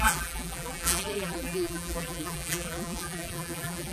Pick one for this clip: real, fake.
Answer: fake